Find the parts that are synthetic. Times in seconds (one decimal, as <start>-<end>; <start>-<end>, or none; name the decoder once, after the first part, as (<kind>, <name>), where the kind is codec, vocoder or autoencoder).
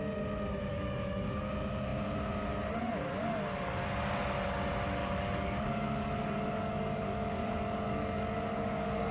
0.7-1.5 (codec, DAC); 5.0-9.1